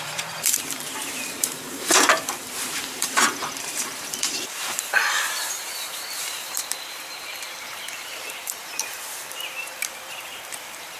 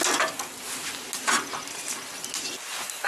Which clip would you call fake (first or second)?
first